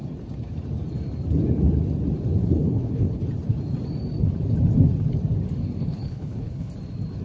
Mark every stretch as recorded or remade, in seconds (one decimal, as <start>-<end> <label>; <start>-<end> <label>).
0.0-2.4 recorded; 2.4-3.2 remade; 3.2-5.8 recorded; 5.8-6.7 remade; 6.7-7.2 recorded